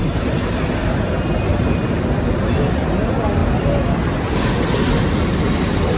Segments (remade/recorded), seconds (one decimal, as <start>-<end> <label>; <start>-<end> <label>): 0.0-1.5 recorded; 1.5-2.2 remade; 2.2-3.4 recorded; 3.4-5.1 remade; 5.1-6.0 recorded